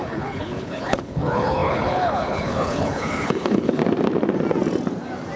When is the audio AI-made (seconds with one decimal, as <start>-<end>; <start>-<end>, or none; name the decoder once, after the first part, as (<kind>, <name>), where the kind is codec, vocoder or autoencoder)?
0.0-3.8 (codec, HILCodec)